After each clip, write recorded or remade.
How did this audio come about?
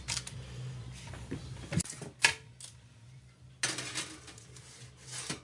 recorded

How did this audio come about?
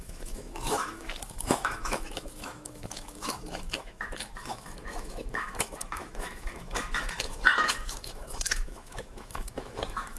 remade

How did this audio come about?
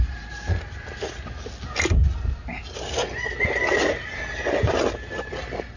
recorded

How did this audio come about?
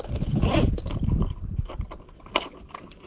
recorded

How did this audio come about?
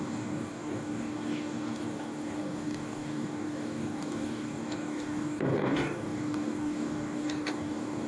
remade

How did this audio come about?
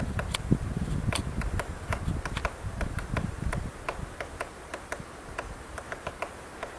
recorded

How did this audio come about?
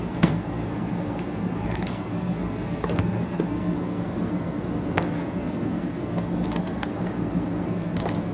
remade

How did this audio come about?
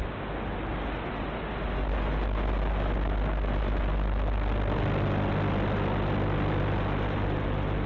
recorded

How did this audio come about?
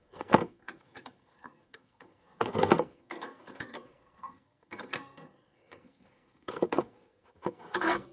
remade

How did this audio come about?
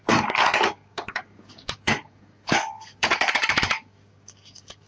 remade